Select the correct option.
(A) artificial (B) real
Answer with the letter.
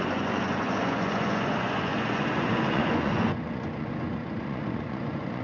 A